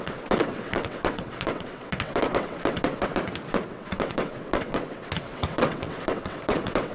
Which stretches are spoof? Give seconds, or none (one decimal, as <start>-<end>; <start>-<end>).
0.0-3.1; 3.7-6.9